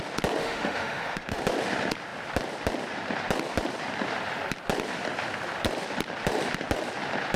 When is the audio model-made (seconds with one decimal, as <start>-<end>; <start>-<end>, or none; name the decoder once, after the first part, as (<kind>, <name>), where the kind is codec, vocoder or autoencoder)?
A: 0.4-1.4 (autoencoder, DAC-VAE)